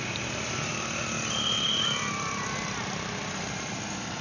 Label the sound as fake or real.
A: real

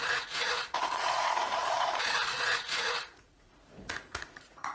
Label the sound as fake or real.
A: fake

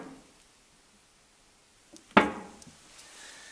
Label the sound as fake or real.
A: real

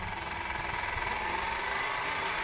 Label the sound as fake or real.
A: real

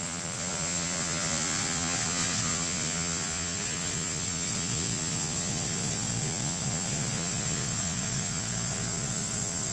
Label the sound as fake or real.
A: fake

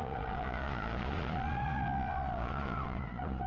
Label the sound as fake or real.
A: fake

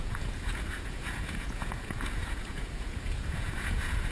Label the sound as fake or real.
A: fake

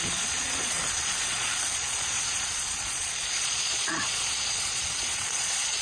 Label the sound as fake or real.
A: fake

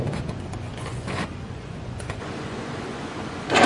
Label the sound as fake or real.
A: fake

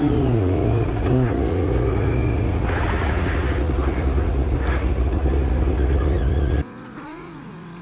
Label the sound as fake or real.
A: fake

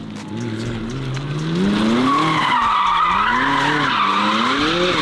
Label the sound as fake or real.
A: real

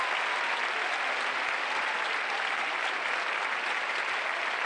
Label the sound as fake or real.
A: real